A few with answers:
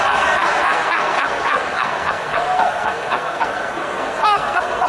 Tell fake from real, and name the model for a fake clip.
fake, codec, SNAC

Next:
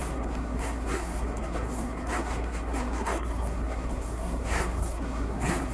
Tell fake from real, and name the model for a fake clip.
fake, codec, SNAC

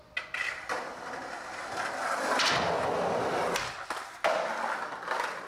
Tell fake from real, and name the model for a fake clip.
real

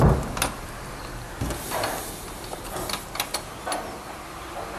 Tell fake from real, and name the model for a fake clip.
real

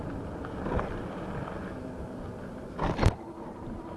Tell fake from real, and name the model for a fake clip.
real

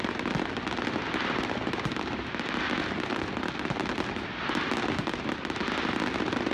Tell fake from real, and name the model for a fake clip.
real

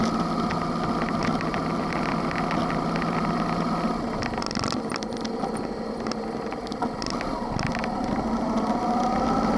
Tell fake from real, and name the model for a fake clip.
real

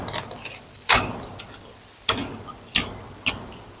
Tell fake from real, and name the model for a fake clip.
real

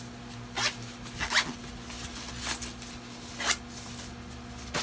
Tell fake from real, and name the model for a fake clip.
real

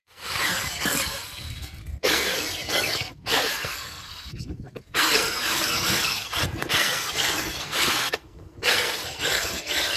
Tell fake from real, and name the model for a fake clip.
fake, codec, SNAC